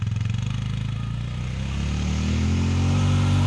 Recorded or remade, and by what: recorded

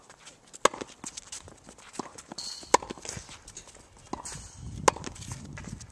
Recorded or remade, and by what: recorded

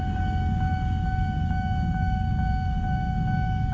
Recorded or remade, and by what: remade, codec, DAC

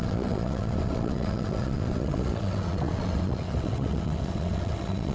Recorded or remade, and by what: remade, vocoder, WaveNeXt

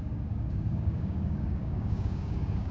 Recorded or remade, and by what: remade, codec, DAC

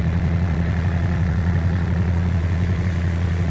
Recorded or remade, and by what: remade, vocoder, Vocos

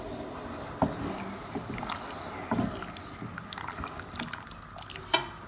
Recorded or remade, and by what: recorded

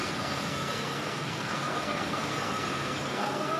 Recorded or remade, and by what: remade, codec, SNAC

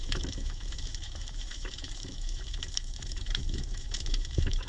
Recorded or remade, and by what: remade, autoencoder, DAC-VAE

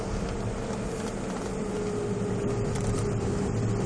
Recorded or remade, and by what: recorded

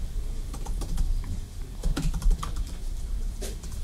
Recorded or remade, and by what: remade, vocoder, BigVGAN v2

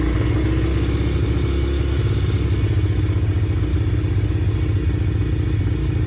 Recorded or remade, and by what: recorded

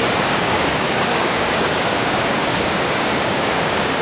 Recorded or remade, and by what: remade, codec, DAC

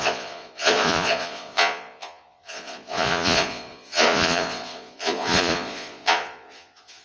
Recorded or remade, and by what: remade, vocoder, Vocos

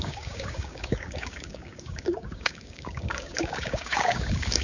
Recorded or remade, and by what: remade, codec, DAC